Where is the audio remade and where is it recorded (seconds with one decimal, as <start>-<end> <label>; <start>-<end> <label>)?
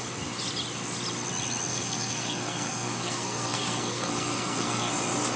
0.0-1.7 recorded; 1.7-4.9 remade; 4.9-5.4 recorded